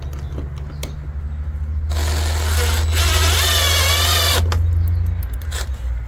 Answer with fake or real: real